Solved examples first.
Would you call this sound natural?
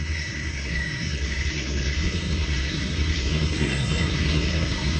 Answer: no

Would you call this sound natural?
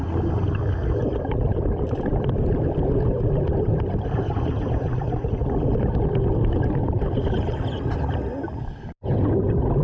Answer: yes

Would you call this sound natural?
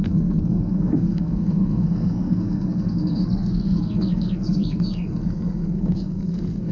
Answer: no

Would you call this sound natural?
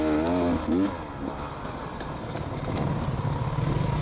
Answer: yes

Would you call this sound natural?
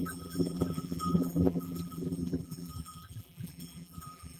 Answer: no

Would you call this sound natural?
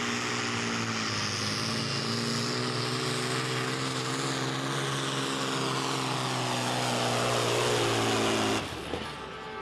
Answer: yes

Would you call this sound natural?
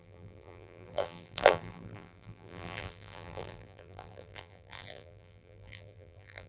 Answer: no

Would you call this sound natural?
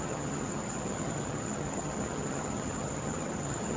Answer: no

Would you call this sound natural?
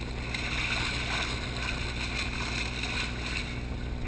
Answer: yes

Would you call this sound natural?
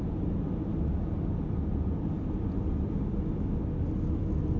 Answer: yes